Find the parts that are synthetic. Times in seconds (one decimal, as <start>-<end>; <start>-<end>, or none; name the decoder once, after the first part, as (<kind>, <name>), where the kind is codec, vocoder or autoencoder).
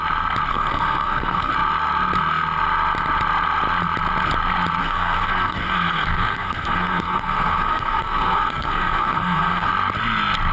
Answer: 0.5-1.5 (codec, SNAC); 4.8-9.7